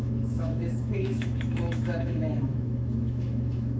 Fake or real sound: fake